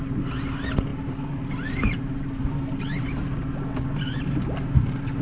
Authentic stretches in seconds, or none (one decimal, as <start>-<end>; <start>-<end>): 0.0-5.2